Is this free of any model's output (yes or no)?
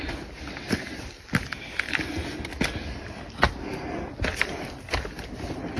yes